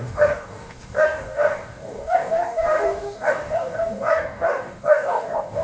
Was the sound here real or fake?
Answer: fake